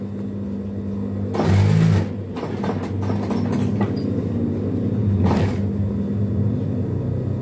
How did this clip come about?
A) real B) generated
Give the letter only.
A